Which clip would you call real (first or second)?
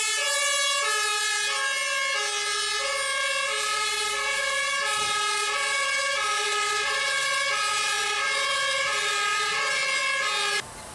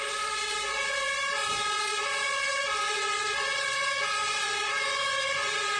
first